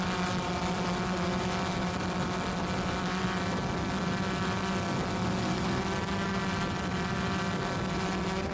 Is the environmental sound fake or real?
real